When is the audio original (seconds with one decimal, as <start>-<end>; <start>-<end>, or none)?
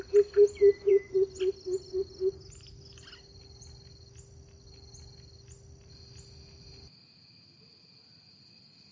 0.0-8.9